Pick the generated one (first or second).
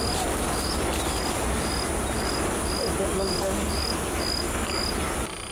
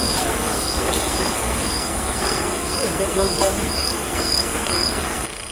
second